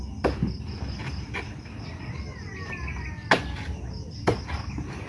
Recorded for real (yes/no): yes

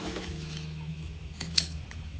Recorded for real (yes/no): no